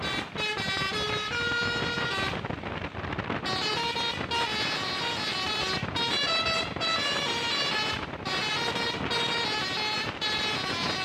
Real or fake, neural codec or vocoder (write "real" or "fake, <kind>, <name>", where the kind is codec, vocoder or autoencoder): real